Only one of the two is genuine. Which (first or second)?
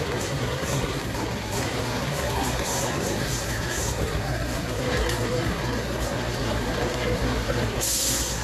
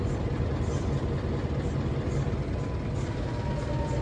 second